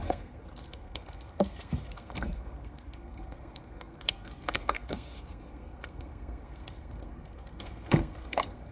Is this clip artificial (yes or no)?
yes